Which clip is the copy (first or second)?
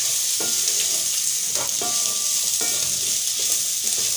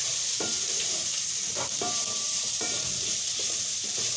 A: second